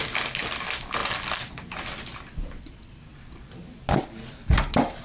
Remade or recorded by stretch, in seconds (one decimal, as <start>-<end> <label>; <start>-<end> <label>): 0.0-5.0 recorded